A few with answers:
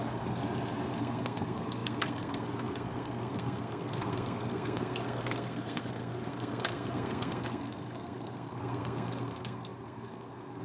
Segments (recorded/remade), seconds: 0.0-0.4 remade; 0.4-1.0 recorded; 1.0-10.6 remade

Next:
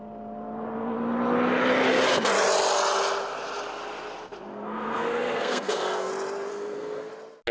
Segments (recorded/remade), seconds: 0.0-4.5 recorded; 4.5-6.1 remade; 6.1-6.5 recorded; 6.5-7.1 remade; 7.1-7.5 recorded

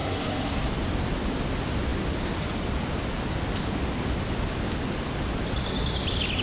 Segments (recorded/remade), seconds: 0.0-0.7 remade; 0.7-6.4 recorded

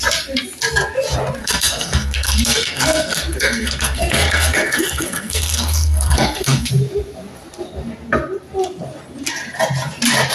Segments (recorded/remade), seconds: 0.0-1.4 recorded; 1.4-6.7 remade; 6.7-10.3 recorded